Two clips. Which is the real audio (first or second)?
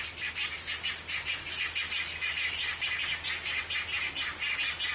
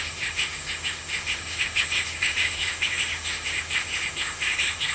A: first